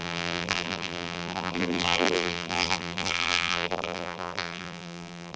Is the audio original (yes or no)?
no